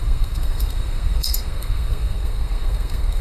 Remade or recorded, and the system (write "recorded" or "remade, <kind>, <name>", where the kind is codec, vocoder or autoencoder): remade, codec, SNAC